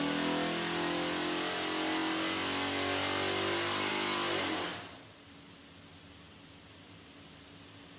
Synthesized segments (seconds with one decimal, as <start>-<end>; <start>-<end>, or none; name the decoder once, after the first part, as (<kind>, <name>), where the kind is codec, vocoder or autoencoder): none